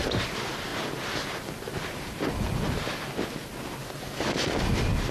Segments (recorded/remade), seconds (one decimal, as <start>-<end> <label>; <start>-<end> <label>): 0.0-5.1 recorded